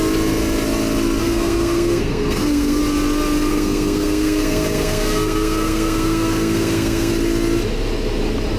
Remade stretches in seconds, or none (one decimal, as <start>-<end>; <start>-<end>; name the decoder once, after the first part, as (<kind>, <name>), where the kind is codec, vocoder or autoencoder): 1.2-2.8 (codec, SNAC); 3.5-7.1